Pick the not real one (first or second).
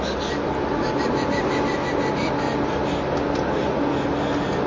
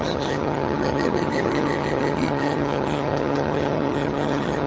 second